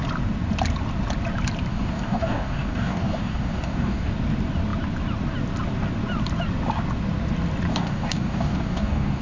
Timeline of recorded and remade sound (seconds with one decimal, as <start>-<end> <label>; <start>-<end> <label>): 0.0-1.7 recorded; 1.7-4.1 remade; 4.1-7.7 recorded; 7.7-9.2 remade